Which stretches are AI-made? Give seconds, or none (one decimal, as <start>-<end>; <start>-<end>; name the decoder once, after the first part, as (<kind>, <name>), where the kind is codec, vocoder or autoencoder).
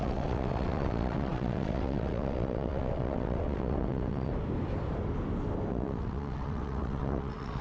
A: 0.0-4.3 (vocoder, WaveNeXt); 5.7-7.6